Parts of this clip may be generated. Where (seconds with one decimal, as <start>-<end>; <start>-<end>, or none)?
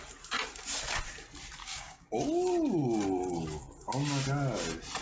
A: 1.6-2.1